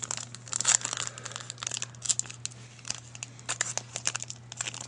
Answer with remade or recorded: recorded